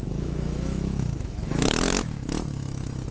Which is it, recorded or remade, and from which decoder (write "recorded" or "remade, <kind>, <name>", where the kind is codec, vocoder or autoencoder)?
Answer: remade, autoencoder, DAC-VAE